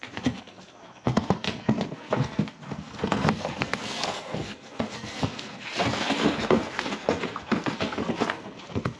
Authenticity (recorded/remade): remade